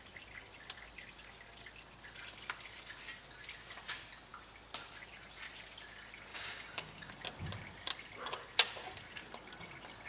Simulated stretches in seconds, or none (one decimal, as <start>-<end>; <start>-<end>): 6.3-7.1